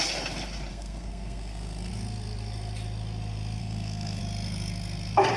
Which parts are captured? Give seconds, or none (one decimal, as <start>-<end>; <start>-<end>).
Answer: 0.0-0.7; 1.9-3.6; 4.2-5.4